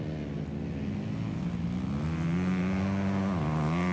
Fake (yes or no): no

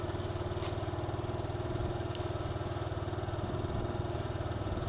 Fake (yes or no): no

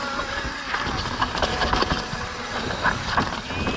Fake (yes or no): no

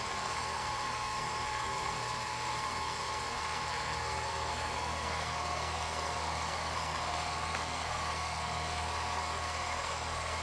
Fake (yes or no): yes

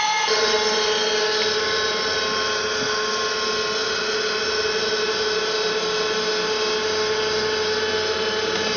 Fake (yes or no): no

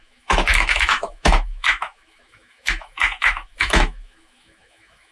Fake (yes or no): yes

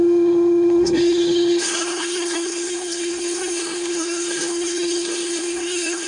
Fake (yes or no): yes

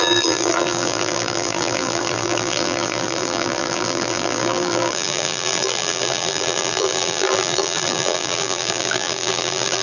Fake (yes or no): yes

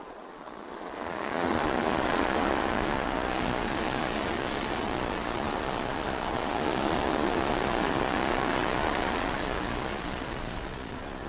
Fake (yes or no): yes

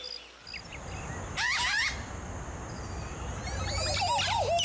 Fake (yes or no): no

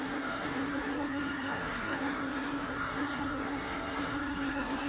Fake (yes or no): yes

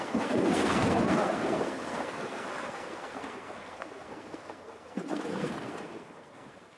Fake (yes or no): yes